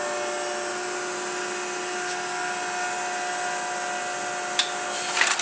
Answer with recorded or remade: recorded